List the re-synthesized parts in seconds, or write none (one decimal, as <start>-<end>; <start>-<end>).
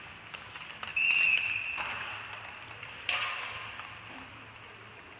0.9-4.0